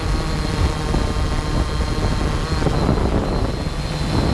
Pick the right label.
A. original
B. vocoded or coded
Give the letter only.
A